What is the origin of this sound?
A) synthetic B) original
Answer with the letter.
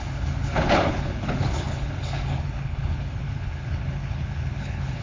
A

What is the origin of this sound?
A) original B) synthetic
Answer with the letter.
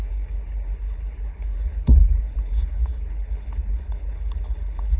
B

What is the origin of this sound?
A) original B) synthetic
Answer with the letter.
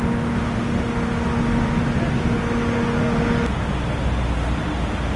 A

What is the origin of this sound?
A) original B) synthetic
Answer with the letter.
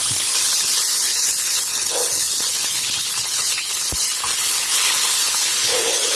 B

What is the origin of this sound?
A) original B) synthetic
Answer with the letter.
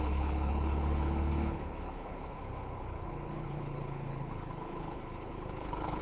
B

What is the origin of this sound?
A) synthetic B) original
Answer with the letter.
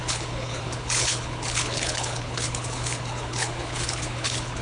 A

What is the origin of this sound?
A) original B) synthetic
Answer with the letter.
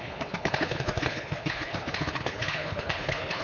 B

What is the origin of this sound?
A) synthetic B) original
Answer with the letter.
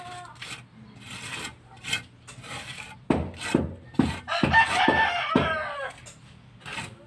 B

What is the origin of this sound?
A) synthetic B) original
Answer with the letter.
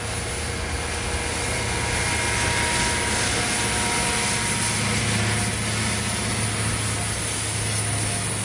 B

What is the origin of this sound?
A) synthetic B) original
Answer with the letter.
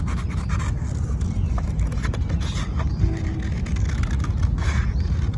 B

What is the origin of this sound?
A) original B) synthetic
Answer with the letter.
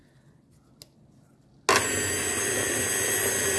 A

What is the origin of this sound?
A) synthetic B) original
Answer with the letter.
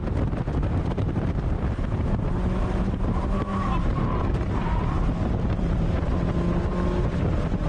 B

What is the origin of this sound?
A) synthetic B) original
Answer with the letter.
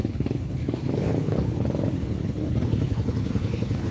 A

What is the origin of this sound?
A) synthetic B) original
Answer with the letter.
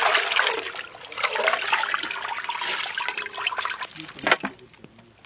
B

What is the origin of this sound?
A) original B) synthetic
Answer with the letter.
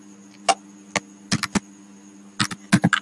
A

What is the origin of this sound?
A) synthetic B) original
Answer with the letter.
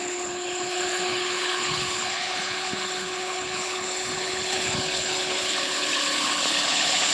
A